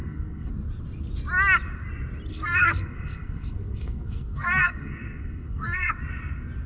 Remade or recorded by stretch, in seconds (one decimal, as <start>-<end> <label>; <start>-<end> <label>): 0.0-0.5 remade; 0.5-2.3 recorded; 2.3-5.9 remade; 5.9-6.7 recorded